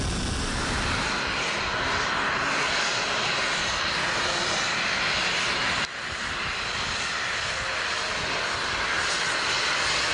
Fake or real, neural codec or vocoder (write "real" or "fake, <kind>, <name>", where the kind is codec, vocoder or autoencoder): real